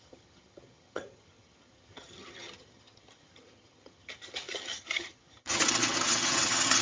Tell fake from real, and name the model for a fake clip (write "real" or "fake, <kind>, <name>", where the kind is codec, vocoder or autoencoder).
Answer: fake, vocoder, HiFi-GAN